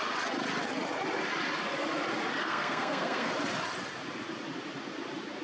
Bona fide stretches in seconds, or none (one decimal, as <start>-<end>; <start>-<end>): 0.0-2.4; 3.3-5.4